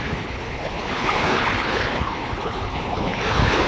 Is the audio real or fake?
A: fake